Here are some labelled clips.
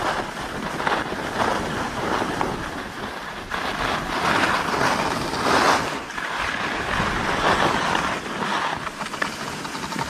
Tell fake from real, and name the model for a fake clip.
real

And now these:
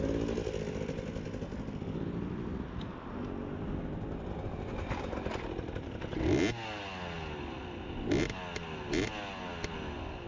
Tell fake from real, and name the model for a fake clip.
real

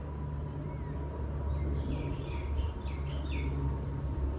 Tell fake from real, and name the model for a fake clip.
real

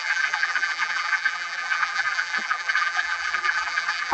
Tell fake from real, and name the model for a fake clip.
fake, vocoder, BigVGAN v2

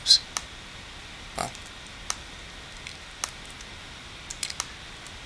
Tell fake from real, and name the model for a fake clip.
real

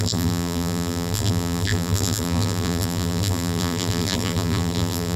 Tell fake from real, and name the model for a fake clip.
fake, vocoder, BigVGAN v2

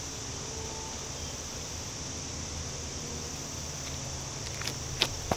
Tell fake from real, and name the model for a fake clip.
real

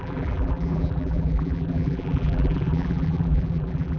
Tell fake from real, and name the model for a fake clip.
fake, vocoder, BigVGAN v2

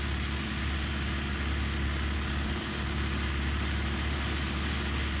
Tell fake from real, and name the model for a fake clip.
real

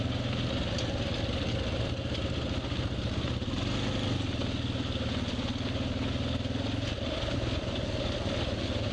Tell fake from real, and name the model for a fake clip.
real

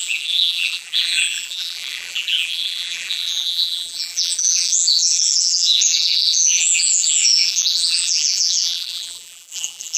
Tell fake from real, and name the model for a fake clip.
fake, vocoder, BigVGAN v2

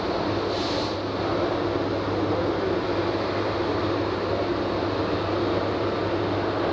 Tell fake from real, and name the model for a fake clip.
real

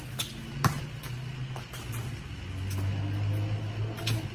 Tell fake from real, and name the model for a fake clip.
real